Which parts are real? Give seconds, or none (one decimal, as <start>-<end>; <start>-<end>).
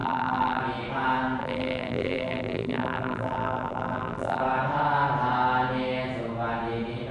0.6-1.4; 4.4-7.1